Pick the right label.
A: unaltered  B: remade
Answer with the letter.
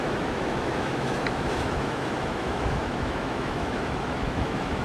B